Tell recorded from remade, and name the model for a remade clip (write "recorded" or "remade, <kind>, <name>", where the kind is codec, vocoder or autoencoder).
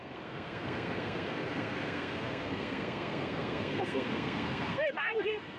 remade, codec, SNAC